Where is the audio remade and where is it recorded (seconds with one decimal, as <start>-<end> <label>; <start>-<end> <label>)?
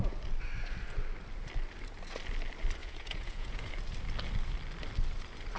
0.0-2.8 recorded; 2.8-3.7 remade; 3.7-5.6 recorded